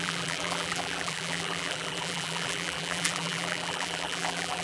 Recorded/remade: remade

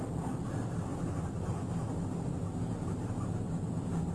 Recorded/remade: recorded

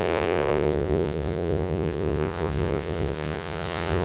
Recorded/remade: remade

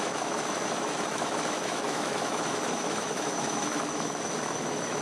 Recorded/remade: remade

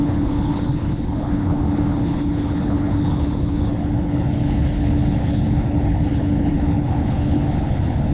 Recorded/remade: remade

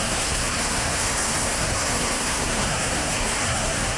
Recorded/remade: remade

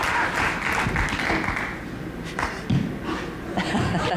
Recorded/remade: recorded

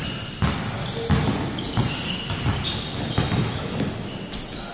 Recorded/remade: recorded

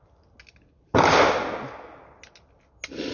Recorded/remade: recorded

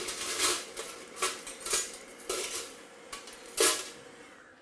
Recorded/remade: recorded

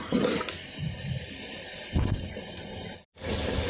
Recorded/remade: remade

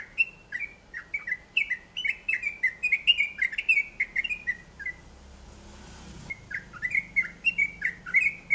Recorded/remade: recorded